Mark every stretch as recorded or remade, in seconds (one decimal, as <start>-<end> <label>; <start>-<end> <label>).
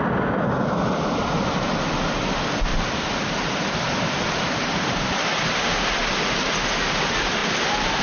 0.0-2.7 recorded; 2.7-5.1 remade; 5.1-7.4 recorded; 7.4-8.0 remade